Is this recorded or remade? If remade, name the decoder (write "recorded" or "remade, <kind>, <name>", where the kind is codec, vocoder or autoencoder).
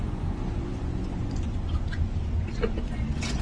remade, vocoder, Vocos